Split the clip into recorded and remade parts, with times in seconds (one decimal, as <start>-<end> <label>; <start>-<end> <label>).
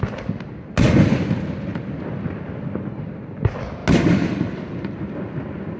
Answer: 0.0-5.8 recorded